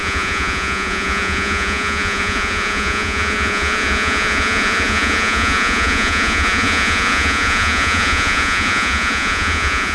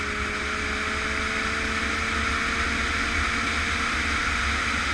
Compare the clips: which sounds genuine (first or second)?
second